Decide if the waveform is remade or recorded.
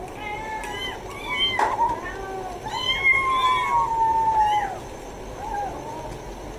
recorded